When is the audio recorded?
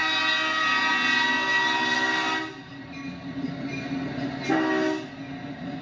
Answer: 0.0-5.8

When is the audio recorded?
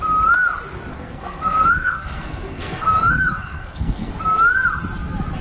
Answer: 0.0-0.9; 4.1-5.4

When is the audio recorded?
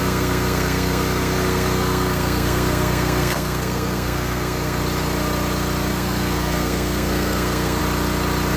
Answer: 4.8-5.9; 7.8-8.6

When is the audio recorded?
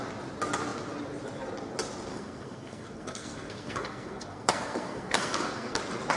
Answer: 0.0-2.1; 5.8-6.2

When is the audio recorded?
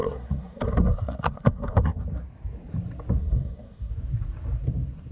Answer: 2.0-3.2; 3.9-5.1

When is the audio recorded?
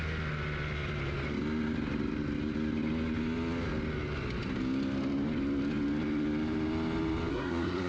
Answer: 0.0-7.3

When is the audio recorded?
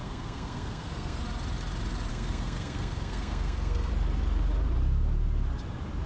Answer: 1.2-2.1; 3.9-6.1